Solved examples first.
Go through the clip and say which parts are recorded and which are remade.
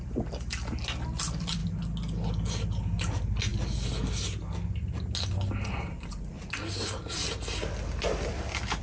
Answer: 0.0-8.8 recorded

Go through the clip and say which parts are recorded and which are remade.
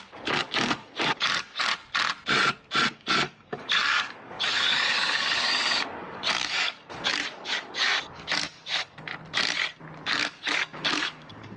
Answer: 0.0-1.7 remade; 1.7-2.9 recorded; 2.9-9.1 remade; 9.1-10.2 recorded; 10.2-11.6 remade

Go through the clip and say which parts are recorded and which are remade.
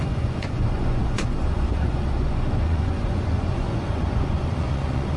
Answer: 0.0-5.2 remade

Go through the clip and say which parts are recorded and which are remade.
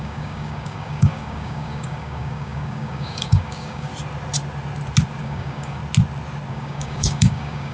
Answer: 0.0-3.9 remade; 3.9-5.2 recorded; 5.2-5.8 remade; 5.8-6.5 recorded; 6.5-7.7 remade